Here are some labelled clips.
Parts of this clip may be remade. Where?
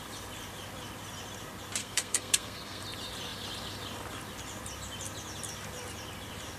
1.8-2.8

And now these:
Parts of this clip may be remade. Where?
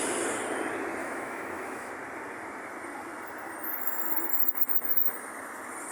1.0-1.9